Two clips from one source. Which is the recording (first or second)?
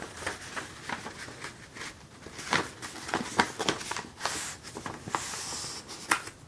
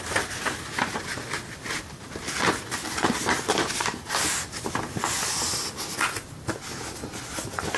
first